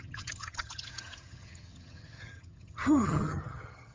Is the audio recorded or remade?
remade